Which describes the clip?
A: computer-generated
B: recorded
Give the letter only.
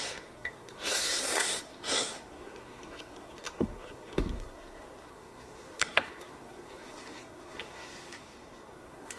A